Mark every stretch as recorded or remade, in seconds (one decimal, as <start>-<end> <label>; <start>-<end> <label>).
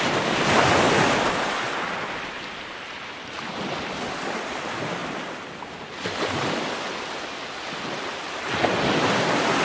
0.0-9.6 recorded